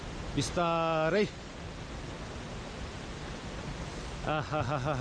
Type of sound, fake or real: real